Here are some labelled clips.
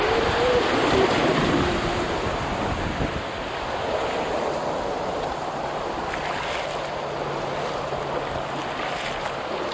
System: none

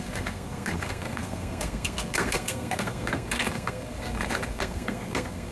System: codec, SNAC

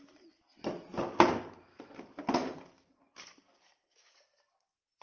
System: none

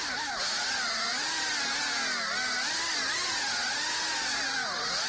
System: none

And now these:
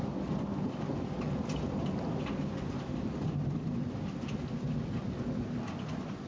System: none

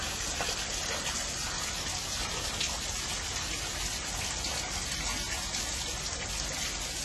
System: none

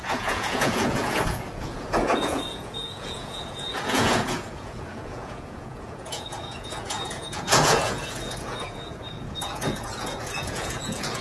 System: vocoder, Vocos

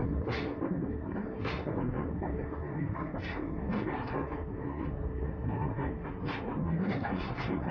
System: codec, SNAC